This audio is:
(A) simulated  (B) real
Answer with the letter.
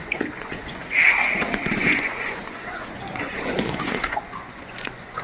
A